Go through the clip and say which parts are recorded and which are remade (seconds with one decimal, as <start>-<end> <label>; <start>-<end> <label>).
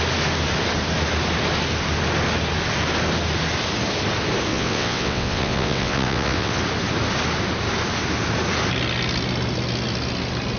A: 0.0-4.5 recorded; 4.5-6.6 remade; 6.6-10.6 recorded